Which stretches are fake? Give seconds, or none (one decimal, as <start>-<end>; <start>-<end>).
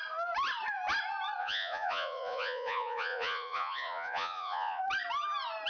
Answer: 1.4-4.8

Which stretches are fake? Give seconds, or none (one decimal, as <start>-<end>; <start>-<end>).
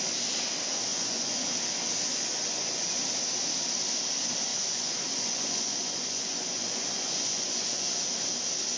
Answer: 0.9-1.4; 2.1-3.0; 4.5-8.0